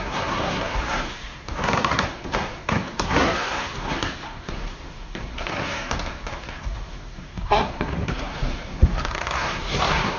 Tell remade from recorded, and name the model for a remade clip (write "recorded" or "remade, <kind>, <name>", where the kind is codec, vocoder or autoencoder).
remade, codec, SNAC